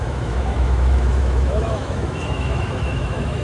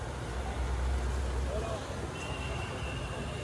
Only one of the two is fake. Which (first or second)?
first